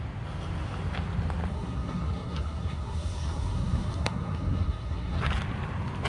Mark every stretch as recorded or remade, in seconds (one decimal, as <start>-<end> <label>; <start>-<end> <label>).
0.0-1.5 recorded; 1.5-5.2 remade; 5.2-6.1 recorded